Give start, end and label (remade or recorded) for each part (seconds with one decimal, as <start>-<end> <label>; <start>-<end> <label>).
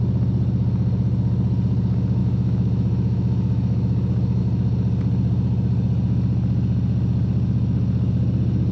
0.0-2.2 recorded; 2.2-4.4 remade; 4.4-8.7 recorded